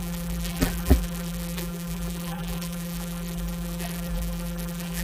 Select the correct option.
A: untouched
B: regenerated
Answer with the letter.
B